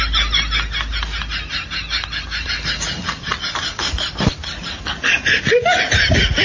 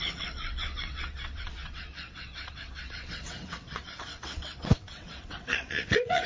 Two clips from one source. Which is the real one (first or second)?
first